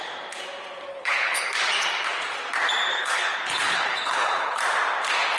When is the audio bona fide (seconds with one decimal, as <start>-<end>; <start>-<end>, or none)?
0.0-0.9; 1.5-2.9; 4.6-5.4